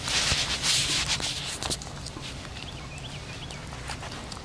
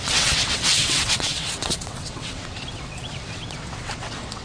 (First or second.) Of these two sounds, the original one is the first